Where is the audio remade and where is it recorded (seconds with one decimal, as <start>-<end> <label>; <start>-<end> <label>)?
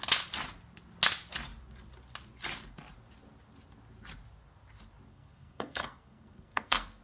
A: 0.0-5.1 recorded; 5.1-7.0 remade